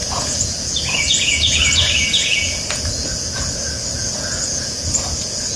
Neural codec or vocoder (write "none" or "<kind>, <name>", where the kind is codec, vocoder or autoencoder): vocoder, Vocos